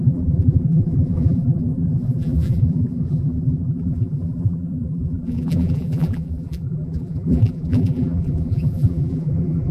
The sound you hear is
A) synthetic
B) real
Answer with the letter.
A